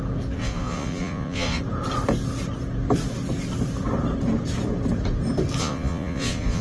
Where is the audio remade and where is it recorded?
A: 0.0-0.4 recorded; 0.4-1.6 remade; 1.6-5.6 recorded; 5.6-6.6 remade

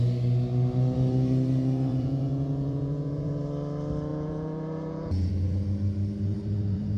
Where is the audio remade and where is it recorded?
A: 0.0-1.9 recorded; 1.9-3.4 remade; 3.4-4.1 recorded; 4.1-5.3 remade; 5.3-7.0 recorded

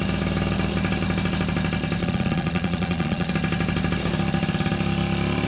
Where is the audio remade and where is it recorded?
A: 0.0-2.0 recorded; 2.0-3.3 remade; 3.3-5.5 recorded

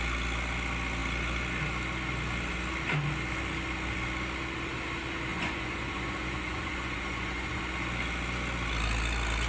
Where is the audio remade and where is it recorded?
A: 0.0-5.3 recorded; 5.3-7.6 remade; 7.6-9.5 recorded